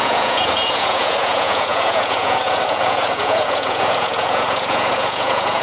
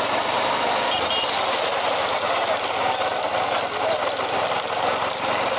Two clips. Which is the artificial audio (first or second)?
first